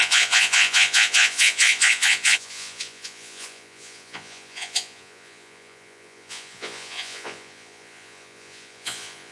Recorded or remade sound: remade